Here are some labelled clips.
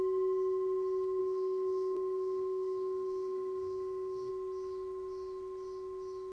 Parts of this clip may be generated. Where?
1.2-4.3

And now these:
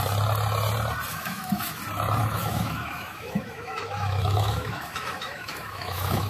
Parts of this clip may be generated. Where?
1.1-1.8; 2.2-6.3

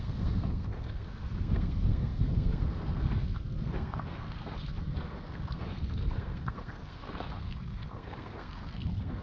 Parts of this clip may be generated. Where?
0.0-9.2

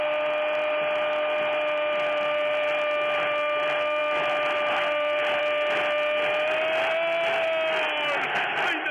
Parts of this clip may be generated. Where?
none